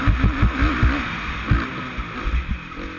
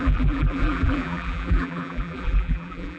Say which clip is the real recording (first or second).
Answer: first